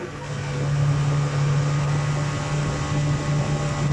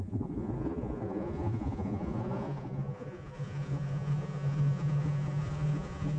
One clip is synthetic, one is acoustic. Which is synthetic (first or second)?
second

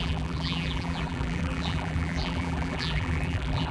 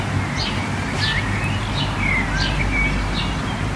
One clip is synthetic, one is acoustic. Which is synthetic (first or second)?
first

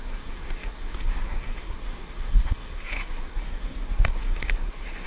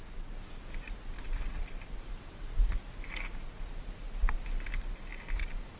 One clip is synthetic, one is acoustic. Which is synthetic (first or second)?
first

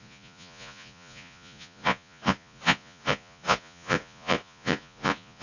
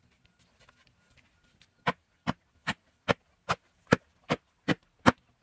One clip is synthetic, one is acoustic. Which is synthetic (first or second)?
first